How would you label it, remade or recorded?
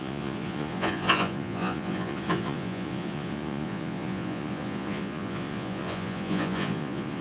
remade